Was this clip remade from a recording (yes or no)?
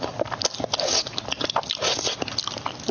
no